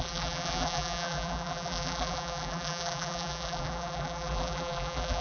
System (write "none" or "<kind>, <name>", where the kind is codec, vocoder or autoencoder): vocoder, BigVGAN v2